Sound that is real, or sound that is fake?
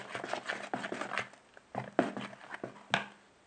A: real